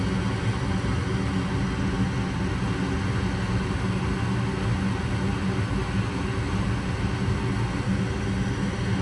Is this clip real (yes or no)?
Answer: yes